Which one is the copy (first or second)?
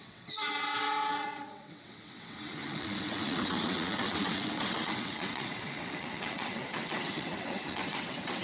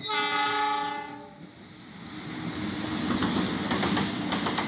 first